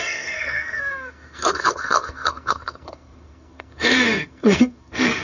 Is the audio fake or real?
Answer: fake